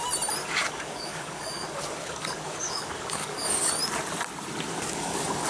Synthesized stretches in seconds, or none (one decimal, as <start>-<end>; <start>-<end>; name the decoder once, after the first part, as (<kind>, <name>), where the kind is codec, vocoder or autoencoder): 0.4-3.7 (codec, DAC); 4.7-5.5